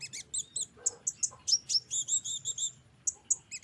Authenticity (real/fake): real